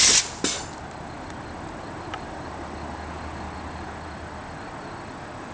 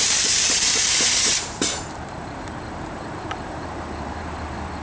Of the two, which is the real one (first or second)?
first